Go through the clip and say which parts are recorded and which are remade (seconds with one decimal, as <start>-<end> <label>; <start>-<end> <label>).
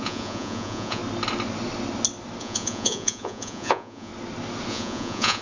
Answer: 0.0-1.0 remade; 1.0-2.4 recorded; 2.4-4.1 remade; 4.1-4.7 recorded; 4.7-5.4 remade